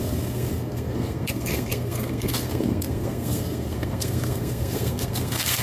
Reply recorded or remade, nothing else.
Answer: remade